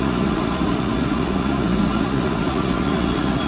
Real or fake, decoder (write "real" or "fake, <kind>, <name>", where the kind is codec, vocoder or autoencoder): fake, vocoder, Vocos